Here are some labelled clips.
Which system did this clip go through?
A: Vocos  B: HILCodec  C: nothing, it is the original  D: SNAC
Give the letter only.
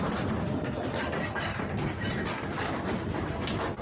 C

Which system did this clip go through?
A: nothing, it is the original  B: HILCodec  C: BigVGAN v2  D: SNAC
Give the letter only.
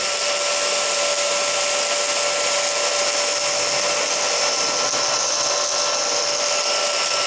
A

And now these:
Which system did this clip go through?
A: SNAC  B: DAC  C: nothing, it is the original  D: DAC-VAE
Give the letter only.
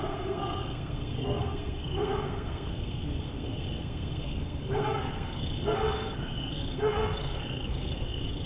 A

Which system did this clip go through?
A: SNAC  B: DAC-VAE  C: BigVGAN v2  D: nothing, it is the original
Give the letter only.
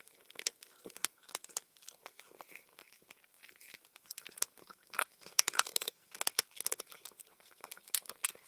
A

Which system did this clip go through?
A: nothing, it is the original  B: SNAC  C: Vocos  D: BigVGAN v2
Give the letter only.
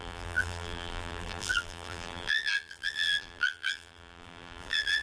D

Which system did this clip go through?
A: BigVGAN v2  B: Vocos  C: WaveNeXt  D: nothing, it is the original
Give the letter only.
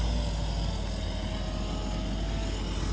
D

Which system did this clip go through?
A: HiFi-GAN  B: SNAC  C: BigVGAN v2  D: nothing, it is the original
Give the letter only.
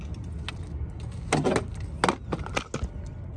D